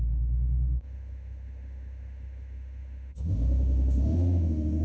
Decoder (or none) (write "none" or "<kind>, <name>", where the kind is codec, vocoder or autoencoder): autoencoder, DAC-VAE